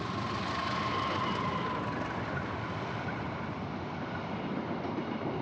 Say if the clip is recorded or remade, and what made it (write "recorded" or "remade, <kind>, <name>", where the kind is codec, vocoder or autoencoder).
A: recorded